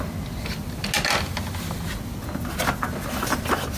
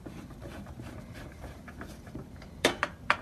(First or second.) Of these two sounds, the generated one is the second